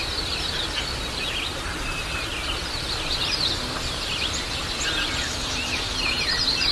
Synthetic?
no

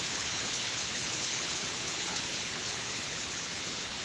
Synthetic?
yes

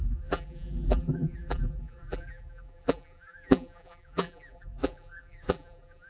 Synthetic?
yes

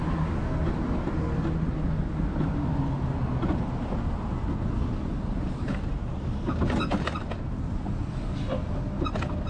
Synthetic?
no